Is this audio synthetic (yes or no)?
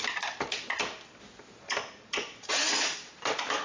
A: no